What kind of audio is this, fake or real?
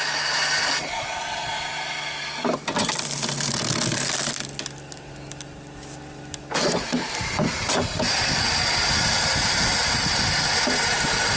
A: real